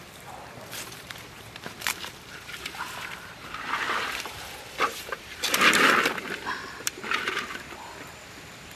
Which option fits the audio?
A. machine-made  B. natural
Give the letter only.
A